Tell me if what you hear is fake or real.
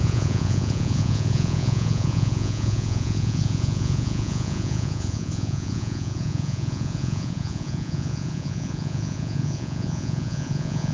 fake